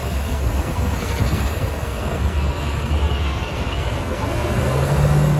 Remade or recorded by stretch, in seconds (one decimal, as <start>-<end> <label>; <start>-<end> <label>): 0.0-5.4 remade